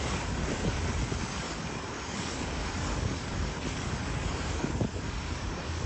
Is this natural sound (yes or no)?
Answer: no